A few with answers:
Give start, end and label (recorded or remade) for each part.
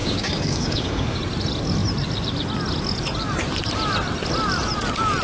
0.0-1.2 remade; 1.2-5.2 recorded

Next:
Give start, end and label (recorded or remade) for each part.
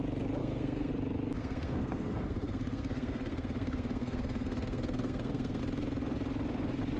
0.0-0.4 recorded; 0.4-0.9 remade; 0.9-1.4 recorded; 1.4-5.6 remade; 5.6-7.0 recorded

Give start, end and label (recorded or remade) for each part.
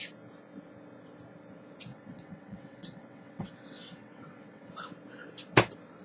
0.0-1.9 recorded; 1.9-4.7 remade; 4.7-6.0 recorded